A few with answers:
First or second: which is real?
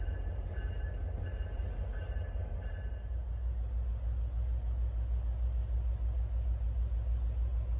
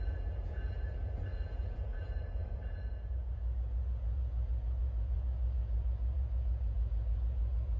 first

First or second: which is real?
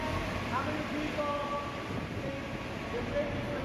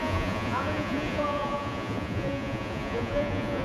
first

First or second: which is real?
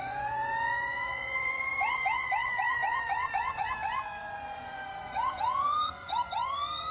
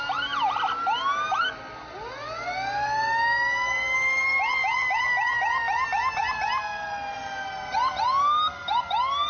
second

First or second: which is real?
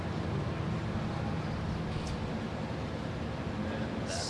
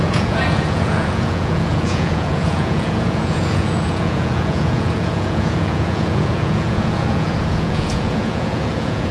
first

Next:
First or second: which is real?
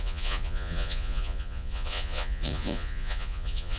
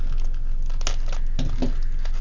second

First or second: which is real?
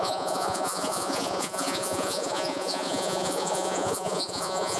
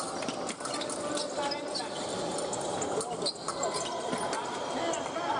second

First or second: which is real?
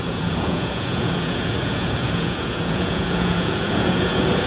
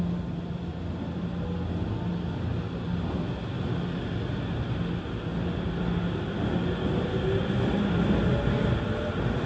second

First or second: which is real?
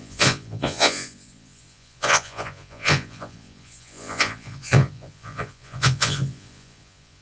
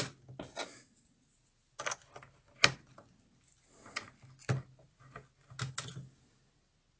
second